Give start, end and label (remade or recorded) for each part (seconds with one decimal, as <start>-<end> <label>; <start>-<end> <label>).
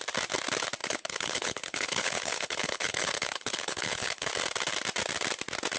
0.0-0.8 recorded; 0.8-4.3 remade; 4.3-5.8 recorded